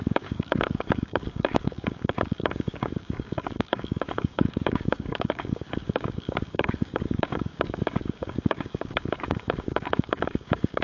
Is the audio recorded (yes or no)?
no